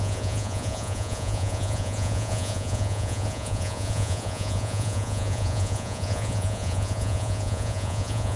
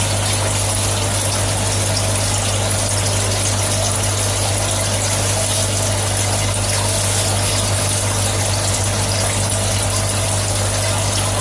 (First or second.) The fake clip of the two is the first